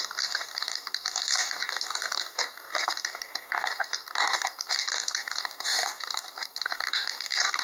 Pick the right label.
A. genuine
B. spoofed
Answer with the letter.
B